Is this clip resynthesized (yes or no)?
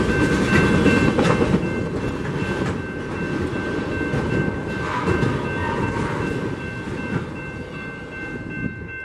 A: no